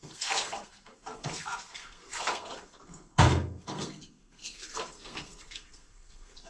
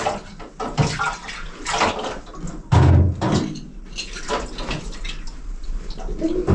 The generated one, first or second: first